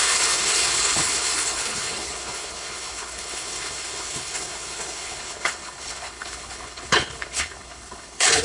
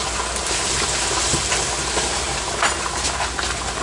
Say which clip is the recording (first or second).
second